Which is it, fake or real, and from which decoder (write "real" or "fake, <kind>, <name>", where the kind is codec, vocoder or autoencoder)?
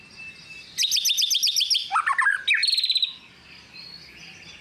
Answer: real